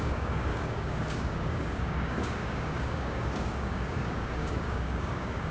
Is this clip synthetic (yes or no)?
yes